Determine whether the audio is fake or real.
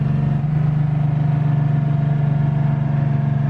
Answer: real